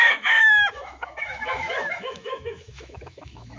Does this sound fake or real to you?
fake